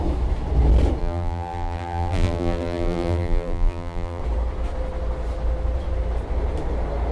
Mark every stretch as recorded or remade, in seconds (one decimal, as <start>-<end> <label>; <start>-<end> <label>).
0.0-1.0 recorded; 1.0-4.2 remade; 4.2-7.1 recorded